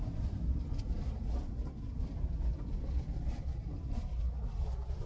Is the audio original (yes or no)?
no